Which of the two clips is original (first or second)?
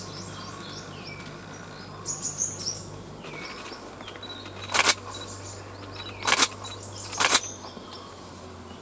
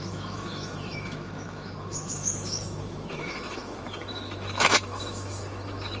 first